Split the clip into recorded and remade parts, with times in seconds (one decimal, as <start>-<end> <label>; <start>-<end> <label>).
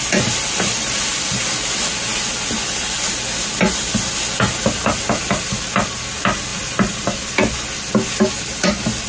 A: 0.0-6.5 recorded; 6.5-7.9 remade; 7.9-9.1 recorded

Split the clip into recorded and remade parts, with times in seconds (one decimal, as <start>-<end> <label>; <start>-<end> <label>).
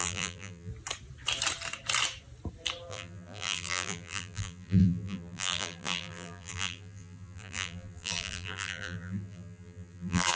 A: 0.0-0.7 remade; 0.7-2.9 recorded; 2.9-10.4 remade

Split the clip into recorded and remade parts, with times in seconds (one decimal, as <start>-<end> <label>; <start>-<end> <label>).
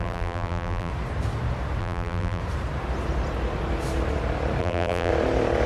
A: 0.0-0.9 remade; 0.9-1.8 recorded; 1.8-2.4 remade; 2.4-4.6 recorded; 4.6-5.1 remade; 5.1-5.7 recorded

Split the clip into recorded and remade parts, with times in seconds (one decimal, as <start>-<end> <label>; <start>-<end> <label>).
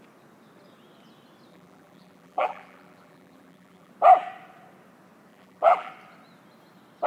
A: 0.0-1.5 recorded; 1.5-3.9 remade; 3.9-5.3 recorded; 5.3-5.9 remade; 5.9-7.1 recorded